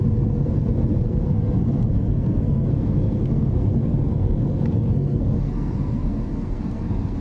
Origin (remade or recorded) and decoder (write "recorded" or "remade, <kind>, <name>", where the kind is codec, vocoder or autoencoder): remade, codec, SNAC